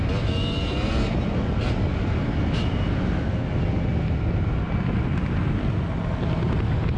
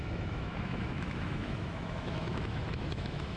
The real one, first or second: first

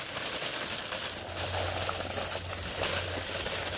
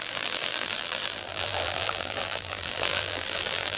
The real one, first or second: first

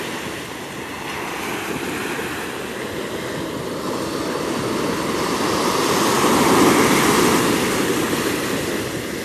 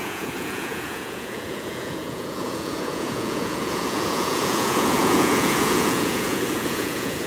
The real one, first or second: first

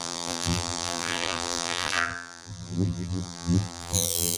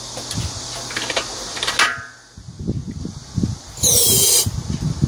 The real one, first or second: second